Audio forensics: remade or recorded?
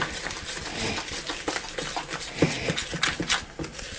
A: recorded